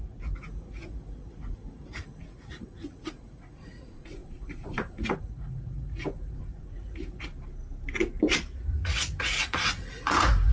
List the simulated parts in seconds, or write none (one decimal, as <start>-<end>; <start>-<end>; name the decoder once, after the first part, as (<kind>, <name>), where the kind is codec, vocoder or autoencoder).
0.0-7.3 (vocoder, Vocos); 8.6-10.5